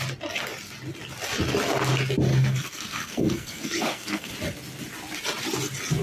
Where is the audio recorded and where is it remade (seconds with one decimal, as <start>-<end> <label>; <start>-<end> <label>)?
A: 0.0-2.3 recorded; 2.3-4.3 remade; 4.3-6.0 recorded